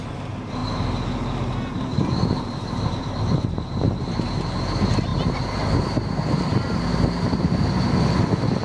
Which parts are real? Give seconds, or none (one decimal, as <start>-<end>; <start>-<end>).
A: 0.0-1.9; 4.0-5.1; 6.8-8.6